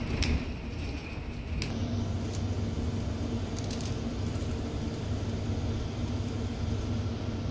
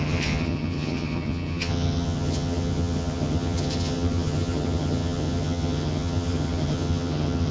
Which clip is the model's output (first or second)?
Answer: second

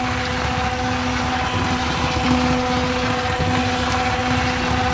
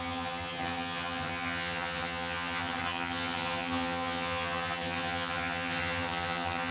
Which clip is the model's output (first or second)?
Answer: second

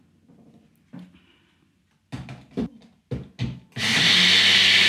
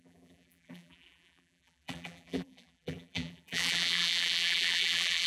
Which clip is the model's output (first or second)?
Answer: second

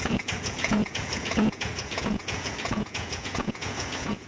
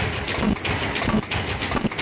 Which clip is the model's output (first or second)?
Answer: first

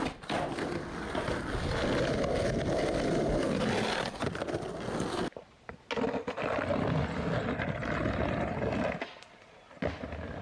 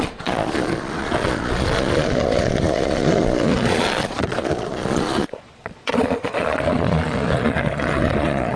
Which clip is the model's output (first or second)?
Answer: second